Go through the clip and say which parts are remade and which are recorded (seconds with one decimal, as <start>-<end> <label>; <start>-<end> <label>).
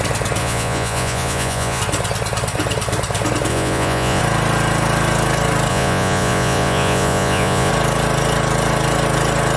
0.0-0.4 recorded; 0.4-1.8 remade; 1.8-3.5 recorded; 3.5-4.2 remade; 4.2-5.7 recorded; 5.7-7.7 remade; 7.7-9.6 recorded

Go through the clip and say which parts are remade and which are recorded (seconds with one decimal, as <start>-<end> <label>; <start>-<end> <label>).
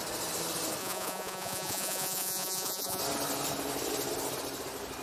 0.0-0.8 recorded; 0.8-3.0 remade; 3.0-5.0 recorded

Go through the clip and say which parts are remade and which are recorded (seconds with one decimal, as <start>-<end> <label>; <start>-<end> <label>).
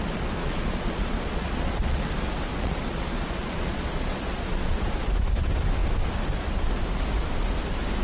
0.0-0.4 recorded; 0.4-2.0 remade; 2.0-2.5 recorded; 2.5-4.9 remade; 4.9-8.0 recorded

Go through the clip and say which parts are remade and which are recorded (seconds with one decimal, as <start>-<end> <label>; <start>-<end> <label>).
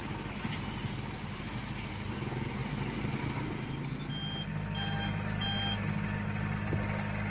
0.0-7.3 recorded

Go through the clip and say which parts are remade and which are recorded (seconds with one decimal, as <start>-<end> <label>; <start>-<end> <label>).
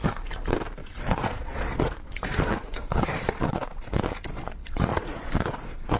0.0-0.8 recorded; 0.8-4.0 remade; 4.0-4.9 recorded; 4.9-6.0 remade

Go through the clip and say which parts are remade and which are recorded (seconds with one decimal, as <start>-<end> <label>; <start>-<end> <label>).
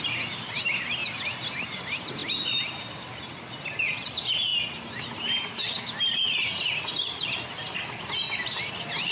0.0-9.1 recorded